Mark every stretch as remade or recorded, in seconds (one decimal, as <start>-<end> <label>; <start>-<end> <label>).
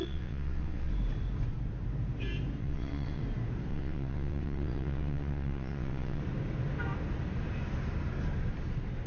0.0-0.9 remade; 0.9-2.6 recorded; 2.6-3.2 remade; 3.2-3.7 recorded; 3.7-6.2 remade; 6.2-9.1 recorded